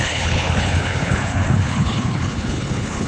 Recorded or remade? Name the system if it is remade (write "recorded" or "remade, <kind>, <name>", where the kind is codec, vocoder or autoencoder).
remade, codec, HILCodec